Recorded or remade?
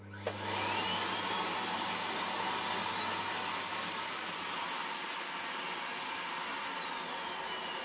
recorded